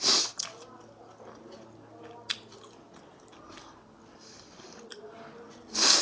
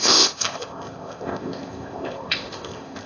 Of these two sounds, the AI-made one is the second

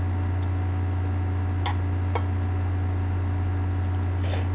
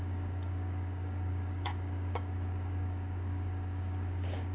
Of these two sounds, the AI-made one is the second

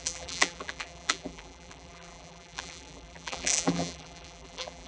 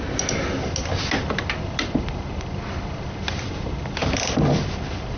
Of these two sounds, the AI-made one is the first